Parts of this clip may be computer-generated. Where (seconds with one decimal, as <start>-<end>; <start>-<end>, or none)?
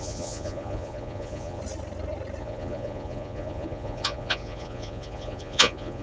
0.0-1.6; 2.4-6.0